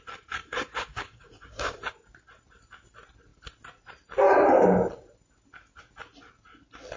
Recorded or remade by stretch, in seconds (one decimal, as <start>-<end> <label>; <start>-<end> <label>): 0.0-0.4 recorded; 0.4-1.9 remade; 1.9-7.0 recorded